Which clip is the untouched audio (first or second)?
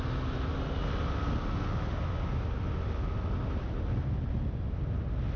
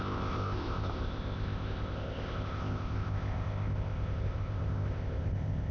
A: first